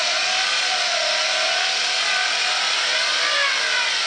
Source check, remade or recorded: recorded